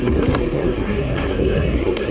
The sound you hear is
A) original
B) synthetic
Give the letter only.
B